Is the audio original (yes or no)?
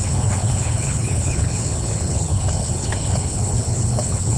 no